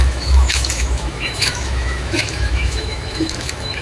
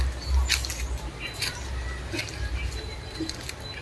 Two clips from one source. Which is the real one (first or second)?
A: second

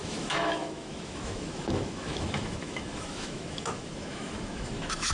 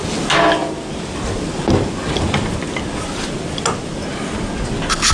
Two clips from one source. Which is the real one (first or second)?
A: second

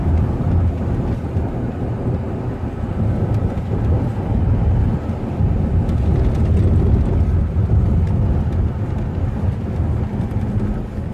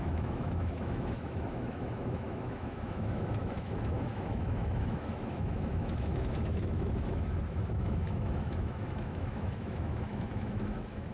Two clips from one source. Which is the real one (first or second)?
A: first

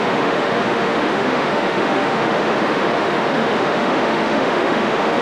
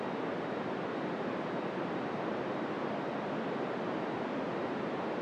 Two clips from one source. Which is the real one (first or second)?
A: second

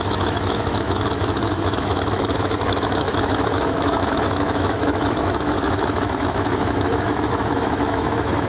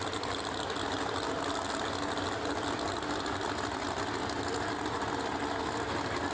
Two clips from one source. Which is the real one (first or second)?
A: second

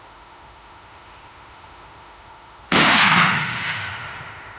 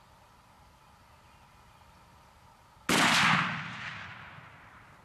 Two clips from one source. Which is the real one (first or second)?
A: second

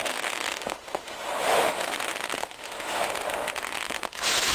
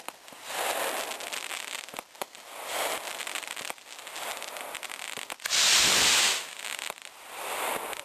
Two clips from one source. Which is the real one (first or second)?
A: second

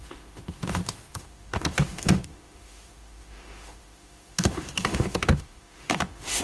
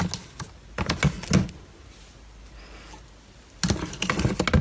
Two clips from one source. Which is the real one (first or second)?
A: second